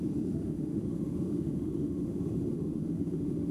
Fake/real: fake